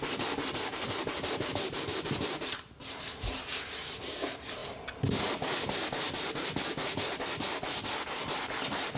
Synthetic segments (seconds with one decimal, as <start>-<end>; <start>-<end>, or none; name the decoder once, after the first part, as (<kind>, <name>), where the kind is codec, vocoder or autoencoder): none